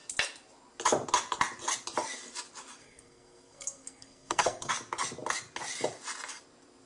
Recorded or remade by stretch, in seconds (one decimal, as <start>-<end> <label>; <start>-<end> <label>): 0.0-2.8 recorded; 2.8-4.7 remade; 4.7-6.9 recorded